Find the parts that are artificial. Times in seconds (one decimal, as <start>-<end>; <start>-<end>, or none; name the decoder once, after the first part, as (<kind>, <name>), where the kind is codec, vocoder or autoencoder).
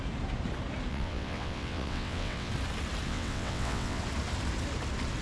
0.9-2.5 (vocoder, WaveNeXt); 3.1-4.0